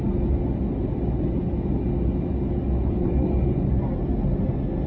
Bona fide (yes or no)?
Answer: yes